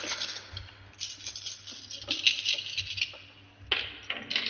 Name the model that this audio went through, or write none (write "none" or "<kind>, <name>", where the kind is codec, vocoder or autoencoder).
none